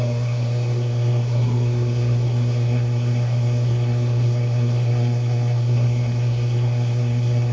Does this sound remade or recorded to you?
remade